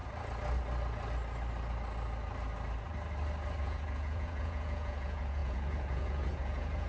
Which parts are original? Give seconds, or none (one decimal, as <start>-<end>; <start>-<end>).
0.0-3.6